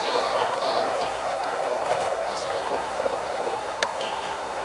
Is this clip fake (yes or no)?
yes